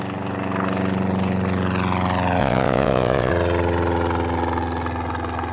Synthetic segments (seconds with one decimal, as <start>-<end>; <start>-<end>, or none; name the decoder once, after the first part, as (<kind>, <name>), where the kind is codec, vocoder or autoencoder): 2.4-3.3 (vocoder, WaveNeXt)